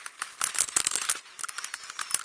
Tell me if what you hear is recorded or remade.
recorded